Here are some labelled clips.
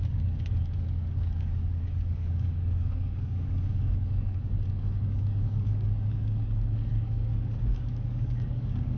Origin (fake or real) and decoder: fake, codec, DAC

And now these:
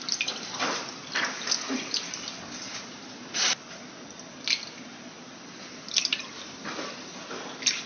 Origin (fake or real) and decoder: real